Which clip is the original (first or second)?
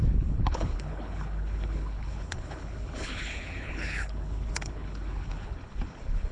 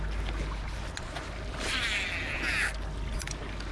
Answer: second